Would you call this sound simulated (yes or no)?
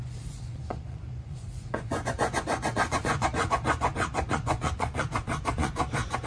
yes